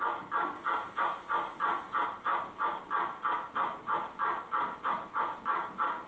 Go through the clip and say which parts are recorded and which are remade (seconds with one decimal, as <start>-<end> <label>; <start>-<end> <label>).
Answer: 0.0-6.1 recorded